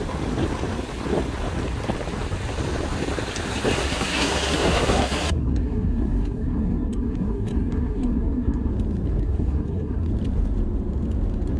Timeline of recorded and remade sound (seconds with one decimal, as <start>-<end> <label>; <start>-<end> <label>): 0.0-3.8 recorded; 3.8-8.7 remade; 8.7-9.2 recorded; 9.2-10.1 remade; 10.1-11.6 recorded